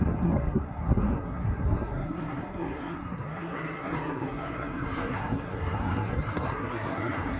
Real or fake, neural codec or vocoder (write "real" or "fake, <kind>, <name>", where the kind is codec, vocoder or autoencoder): fake, codec, SNAC